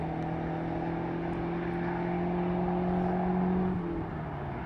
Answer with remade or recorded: recorded